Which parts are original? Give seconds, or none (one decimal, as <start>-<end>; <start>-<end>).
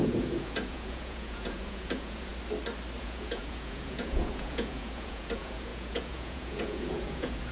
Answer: 2.3-3.0